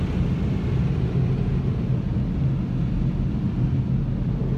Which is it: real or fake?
real